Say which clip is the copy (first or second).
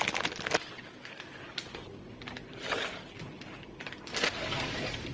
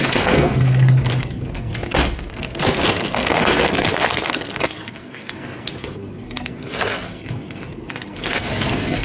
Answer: second